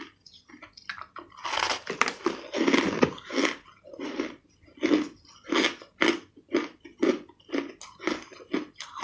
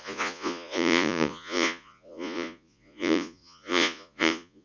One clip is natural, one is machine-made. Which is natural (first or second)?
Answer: first